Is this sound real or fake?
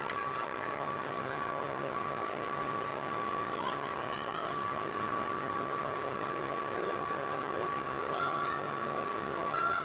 fake